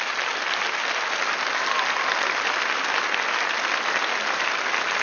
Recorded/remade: recorded